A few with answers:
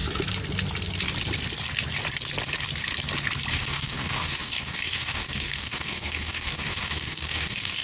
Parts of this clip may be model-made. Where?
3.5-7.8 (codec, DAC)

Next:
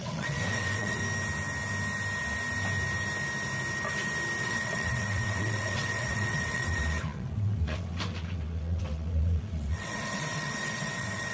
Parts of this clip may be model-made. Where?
0.0-1.0 (vocoder, WaveNeXt); 4.4-11.3

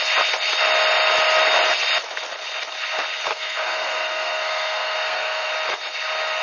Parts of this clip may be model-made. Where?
3.3-5.5 (codec, SNAC)

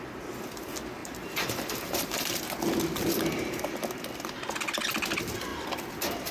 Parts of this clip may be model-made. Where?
1.0-2.4 (vocoder, BigVGAN v2)

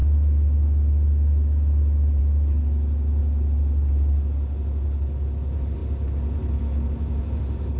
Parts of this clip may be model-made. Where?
none